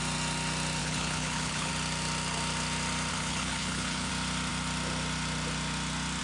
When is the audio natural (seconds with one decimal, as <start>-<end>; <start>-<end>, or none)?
0.0-0.8; 1.7-3.1; 4.1-6.2